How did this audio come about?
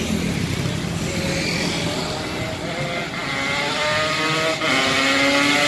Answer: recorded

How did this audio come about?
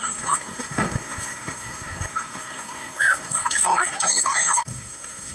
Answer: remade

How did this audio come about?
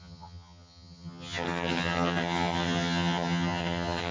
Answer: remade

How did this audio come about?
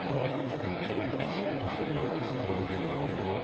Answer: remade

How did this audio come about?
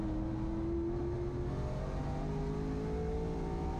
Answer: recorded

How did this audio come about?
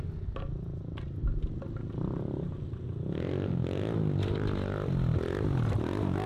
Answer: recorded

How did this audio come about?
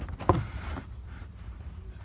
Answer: recorded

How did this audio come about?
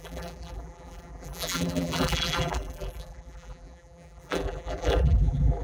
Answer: remade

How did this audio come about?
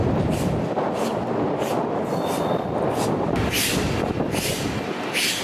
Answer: recorded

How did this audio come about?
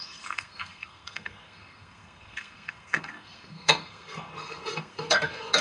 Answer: remade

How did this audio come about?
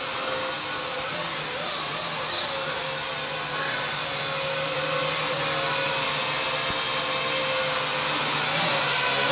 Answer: recorded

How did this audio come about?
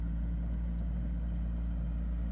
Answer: recorded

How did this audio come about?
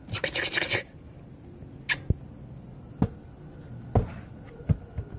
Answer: recorded